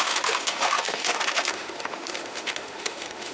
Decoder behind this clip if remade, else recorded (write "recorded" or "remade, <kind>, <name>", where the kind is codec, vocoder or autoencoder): remade, autoencoder, DAC-VAE